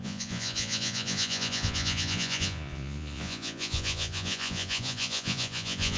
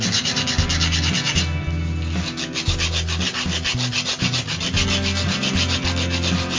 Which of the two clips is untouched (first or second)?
second